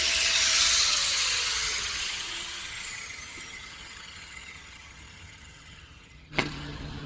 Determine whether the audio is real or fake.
fake